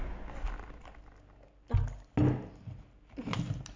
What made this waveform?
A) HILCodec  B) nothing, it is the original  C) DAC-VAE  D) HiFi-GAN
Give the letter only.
B